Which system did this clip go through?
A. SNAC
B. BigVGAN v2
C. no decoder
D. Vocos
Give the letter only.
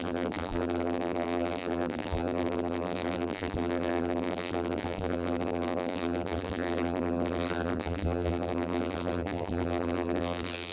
B